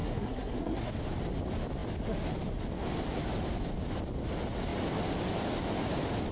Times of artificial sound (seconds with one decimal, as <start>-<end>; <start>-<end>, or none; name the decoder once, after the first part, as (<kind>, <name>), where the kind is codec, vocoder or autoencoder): 0.0-0.9 (codec, SNAC)